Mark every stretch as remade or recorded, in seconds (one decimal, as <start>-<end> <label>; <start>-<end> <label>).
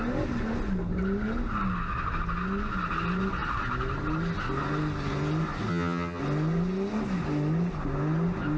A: 0.0-5.7 recorded; 5.7-6.2 remade; 6.2-8.6 recorded